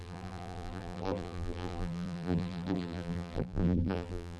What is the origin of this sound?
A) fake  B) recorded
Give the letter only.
A